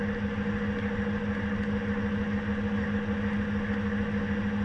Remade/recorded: recorded